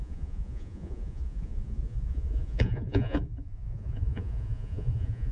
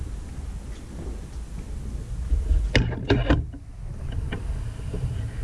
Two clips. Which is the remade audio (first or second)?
first